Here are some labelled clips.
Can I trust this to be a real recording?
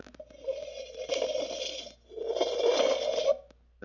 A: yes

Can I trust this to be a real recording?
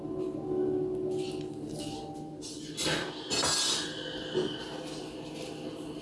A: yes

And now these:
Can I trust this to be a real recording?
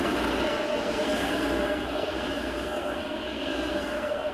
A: no